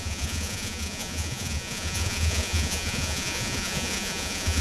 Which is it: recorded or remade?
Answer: remade